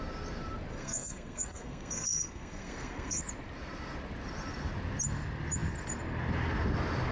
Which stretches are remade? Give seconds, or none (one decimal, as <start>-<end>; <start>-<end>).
0.7-3.2

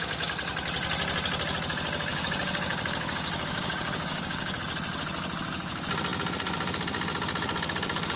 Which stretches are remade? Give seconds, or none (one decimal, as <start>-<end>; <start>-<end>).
2.1-4.6

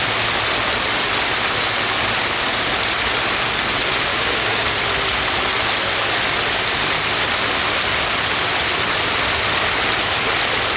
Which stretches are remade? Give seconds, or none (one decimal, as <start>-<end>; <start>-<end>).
4.1-4.8